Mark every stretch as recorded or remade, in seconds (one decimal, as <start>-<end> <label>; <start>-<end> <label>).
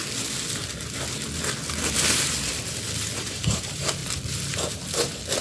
0.0-3.2 recorded; 3.2-4.0 remade; 4.0-5.4 recorded